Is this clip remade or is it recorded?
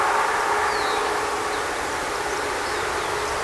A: recorded